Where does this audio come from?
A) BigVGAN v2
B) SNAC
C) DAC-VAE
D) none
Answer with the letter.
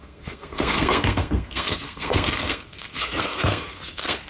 B